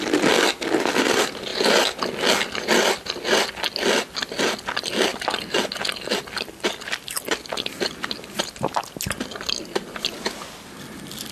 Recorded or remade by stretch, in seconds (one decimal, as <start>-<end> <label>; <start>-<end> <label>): 0.0-11.3 recorded